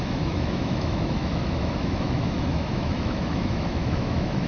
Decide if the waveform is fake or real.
fake